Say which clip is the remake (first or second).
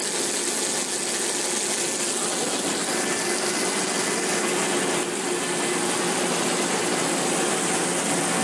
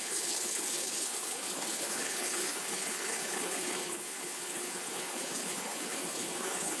second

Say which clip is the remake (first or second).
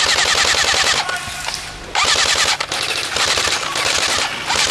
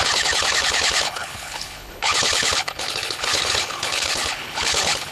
second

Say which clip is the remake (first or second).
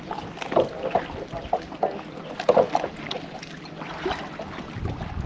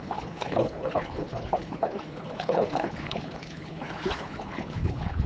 second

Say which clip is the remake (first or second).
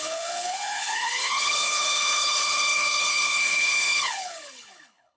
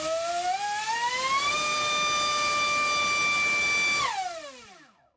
first